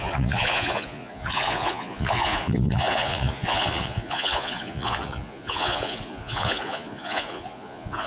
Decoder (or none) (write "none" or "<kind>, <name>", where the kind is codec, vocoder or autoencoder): vocoder, Vocos